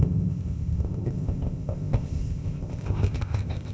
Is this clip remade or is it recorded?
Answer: remade